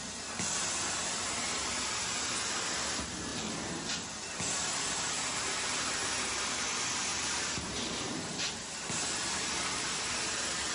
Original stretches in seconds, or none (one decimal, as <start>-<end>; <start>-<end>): 0.0-3.3; 3.8-6.0; 6.5-7.1; 9.1-10.7